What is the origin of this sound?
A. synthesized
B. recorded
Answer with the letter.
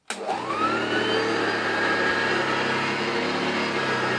B